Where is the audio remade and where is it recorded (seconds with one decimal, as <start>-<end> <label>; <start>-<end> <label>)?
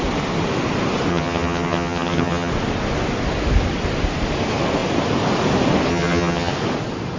0.0-1.1 recorded; 1.1-2.5 remade; 2.5-5.9 recorded; 5.9-6.5 remade; 6.5-7.2 recorded